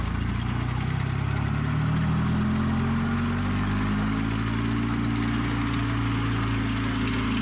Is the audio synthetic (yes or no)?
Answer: no